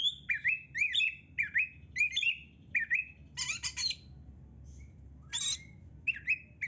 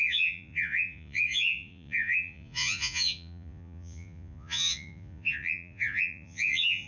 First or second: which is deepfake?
second